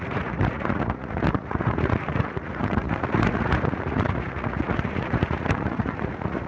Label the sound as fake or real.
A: fake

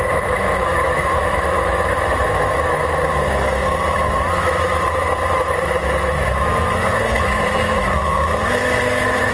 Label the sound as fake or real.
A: fake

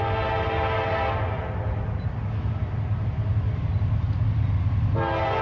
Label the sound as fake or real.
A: real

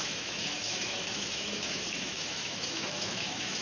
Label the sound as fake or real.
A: fake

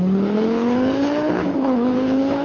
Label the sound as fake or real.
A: fake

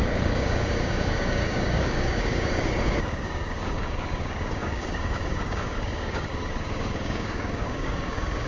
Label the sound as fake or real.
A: fake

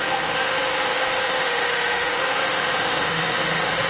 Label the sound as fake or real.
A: fake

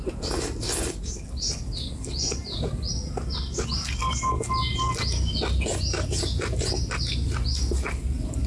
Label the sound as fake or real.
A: real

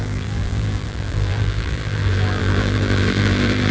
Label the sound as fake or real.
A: fake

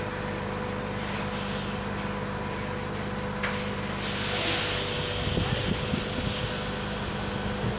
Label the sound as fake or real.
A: real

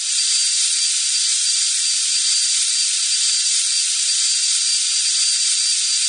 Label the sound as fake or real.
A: real